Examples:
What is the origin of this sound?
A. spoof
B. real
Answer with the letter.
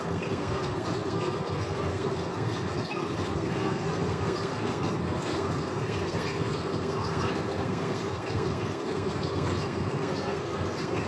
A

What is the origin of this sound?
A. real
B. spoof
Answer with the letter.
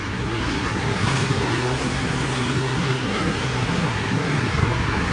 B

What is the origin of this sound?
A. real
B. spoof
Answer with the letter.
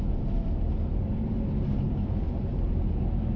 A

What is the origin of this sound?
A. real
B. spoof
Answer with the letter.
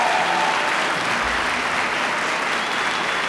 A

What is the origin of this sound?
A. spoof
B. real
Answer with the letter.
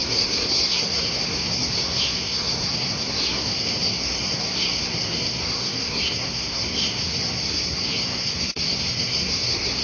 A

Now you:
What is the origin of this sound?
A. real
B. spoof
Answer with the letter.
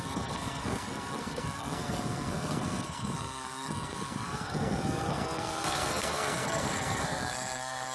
B